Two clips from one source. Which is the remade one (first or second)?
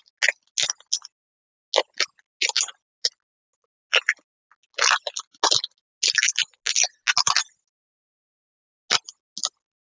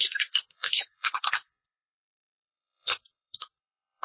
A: second